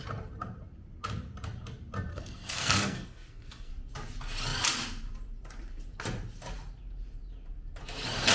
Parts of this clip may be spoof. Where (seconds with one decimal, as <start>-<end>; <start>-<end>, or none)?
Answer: 2.1-3.7